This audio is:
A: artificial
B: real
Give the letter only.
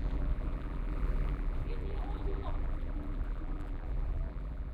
A